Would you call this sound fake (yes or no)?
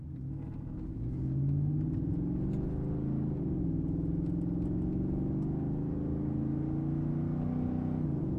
no